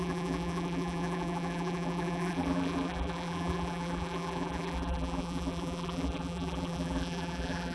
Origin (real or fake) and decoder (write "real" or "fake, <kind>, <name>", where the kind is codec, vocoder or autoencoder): fake, vocoder, BigVGAN v2